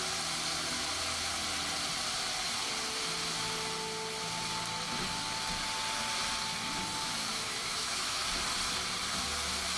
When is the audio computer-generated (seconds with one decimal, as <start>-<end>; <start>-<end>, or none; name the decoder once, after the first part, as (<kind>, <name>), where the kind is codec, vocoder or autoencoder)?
7.3-8.2 (autoencoder, DAC-VAE)